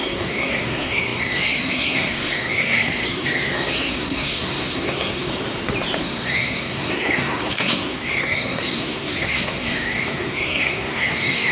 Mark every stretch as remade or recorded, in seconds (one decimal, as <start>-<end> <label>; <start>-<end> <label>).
0.0-5.3 remade; 5.3-6.0 recorded; 6.0-11.5 remade